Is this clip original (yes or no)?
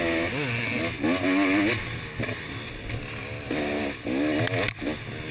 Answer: yes